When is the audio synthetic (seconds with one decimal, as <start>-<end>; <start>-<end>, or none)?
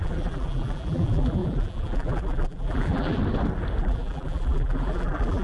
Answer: 0.0-3.2; 3.8-5.4